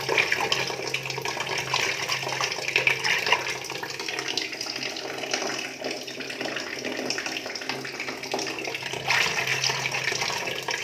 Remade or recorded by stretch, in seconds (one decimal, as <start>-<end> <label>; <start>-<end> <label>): 0.0-10.8 recorded